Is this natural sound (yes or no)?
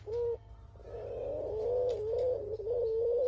yes